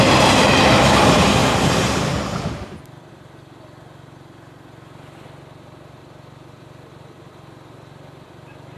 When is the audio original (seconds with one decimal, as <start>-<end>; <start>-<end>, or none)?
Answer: 0.0-8.8